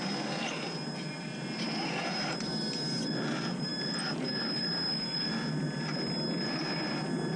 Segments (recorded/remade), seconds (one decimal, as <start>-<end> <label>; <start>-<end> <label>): 0.0-7.4 recorded